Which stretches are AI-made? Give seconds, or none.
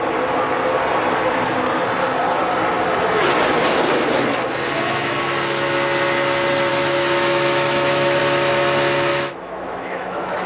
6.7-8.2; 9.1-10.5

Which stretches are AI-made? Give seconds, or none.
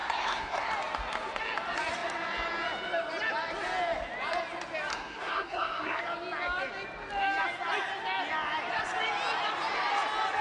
0.0-0.7; 4.9-6.0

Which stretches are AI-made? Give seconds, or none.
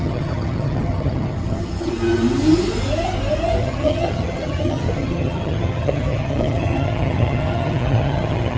0.0-1.9; 3.6-8.6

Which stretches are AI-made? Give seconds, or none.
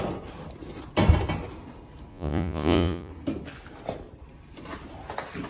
2.1-3.1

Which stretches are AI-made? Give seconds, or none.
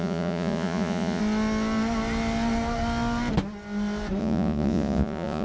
0.0-1.2; 4.2-5.4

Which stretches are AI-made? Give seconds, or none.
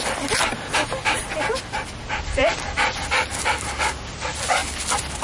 4.6-5.2